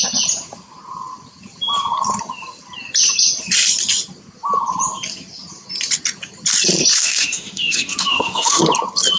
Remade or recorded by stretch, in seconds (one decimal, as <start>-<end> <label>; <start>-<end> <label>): 0.0-7.0 recorded; 7.0-8.6 remade; 8.6-9.2 recorded